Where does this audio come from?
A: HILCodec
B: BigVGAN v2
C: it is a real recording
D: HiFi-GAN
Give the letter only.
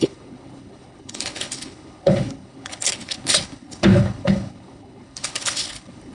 A